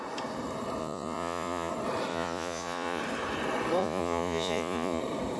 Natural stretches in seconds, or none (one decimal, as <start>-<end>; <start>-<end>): 0.0-0.8; 1.7-2.1; 3.0-3.8; 5.0-5.4